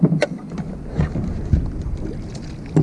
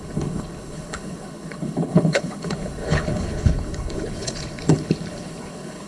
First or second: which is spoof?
second